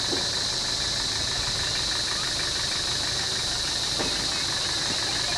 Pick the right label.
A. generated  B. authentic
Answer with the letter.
B